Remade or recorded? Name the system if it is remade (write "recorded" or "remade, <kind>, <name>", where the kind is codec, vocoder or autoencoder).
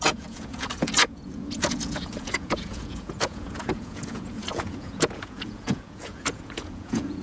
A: remade, vocoder, Vocos